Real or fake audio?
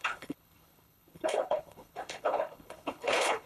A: fake